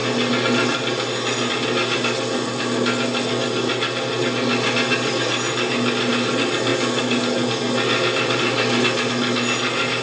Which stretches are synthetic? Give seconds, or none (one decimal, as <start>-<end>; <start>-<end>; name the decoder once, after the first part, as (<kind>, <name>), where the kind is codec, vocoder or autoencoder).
none